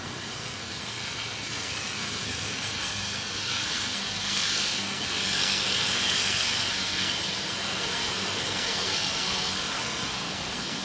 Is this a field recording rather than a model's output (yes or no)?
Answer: no